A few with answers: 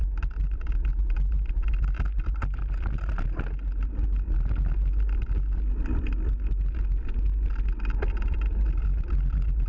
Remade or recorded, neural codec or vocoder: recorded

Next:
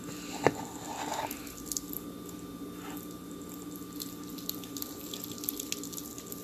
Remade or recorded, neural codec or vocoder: recorded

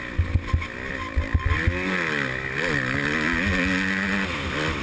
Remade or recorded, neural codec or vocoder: recorded